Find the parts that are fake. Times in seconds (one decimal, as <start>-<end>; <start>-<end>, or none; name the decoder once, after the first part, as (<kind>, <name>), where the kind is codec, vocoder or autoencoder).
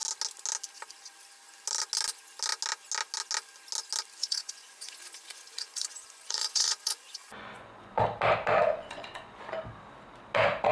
4.2-8.0 (vocoder, Vocos); 8.6-9.5